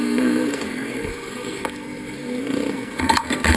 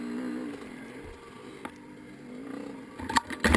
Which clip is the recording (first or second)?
second